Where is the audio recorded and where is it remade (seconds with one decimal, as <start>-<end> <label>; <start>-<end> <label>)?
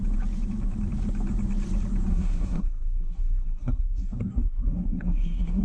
0.0-2.1 recorded; 2.1-5.6 remade